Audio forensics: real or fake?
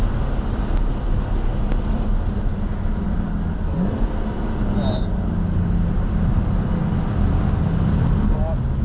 real